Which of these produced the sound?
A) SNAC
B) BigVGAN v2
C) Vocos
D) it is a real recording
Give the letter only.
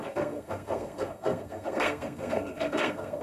A